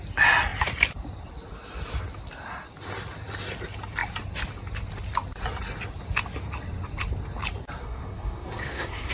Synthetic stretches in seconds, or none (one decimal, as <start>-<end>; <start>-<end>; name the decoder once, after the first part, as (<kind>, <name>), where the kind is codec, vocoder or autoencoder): 7.8-9.1 (codec, SNAC)